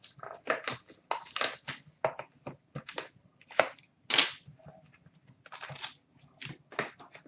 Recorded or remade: recorded